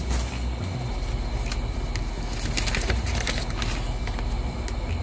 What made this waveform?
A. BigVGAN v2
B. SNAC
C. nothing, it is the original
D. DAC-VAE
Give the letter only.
C